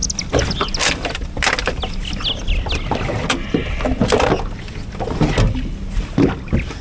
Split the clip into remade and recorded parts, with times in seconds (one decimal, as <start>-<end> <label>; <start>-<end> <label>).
0.0-6.8 recorded